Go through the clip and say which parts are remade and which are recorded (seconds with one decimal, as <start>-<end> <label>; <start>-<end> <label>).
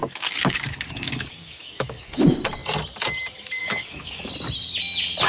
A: 0.0-2.2 remade; 2.2-3.6 recorded; 3.6-4.3 remade; 4.3-5.3 recorded